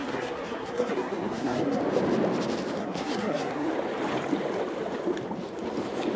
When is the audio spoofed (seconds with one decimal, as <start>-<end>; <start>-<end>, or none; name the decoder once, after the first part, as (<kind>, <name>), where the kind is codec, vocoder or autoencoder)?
0.0-1.8 (codec, SNAC); 2.8-3.7